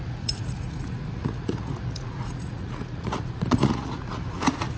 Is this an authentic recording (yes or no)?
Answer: no